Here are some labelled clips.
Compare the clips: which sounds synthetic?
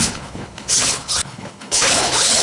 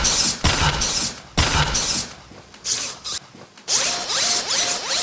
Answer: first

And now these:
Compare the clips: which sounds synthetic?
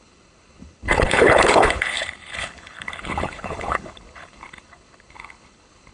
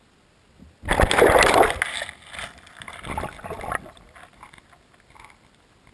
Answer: first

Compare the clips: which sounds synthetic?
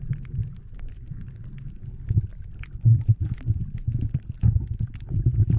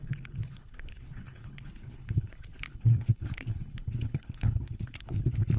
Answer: second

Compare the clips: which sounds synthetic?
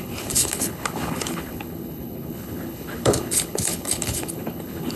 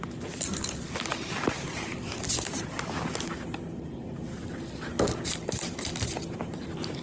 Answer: first